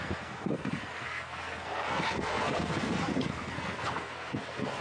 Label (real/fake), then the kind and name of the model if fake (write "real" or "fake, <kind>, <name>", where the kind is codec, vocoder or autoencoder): fake, codec, SNAC